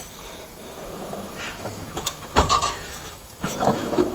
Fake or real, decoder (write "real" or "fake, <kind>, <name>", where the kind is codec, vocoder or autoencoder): fake, autoencoder, DAC-VAE